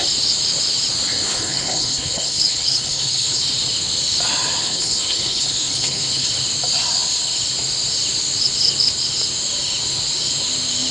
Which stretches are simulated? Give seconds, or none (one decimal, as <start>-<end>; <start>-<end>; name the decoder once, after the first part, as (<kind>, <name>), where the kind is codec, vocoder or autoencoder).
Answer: 1.3-3.4 (codec, HILCodec); 4.6-6.3